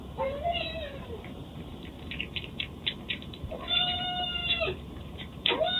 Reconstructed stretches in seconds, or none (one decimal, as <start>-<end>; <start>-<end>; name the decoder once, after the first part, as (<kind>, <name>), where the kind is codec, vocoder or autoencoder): 0.0-5.8 (vocoder, BigVGAN v2)